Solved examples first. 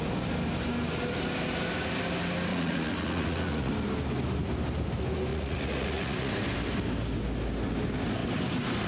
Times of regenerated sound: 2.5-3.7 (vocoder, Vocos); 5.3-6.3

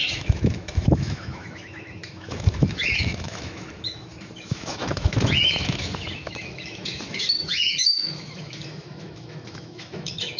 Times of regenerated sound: 0.0-10.4 (autoencoder, DAC-VAE)

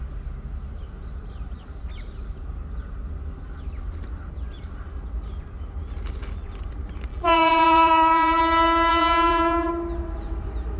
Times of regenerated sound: 7.1-8.4 (vocoder, BigVGAN v2); 8.9-9.7

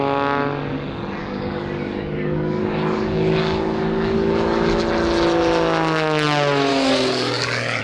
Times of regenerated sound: 1.2-4.8 (codec, DAC); 6.7-7.8

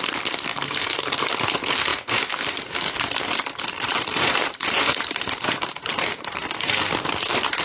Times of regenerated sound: 0.5-1.3 (vocoder, BigVGAN v2); 1.9-2.5; 4.1-6.8

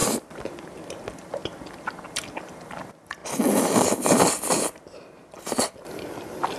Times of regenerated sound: 0.0-3.2 (vocoder, BigVGAN v2); 5.7-6.6

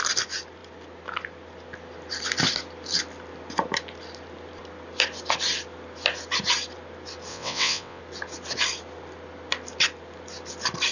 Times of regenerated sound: 7.3-8.0 (vocoder, WaveNeXt)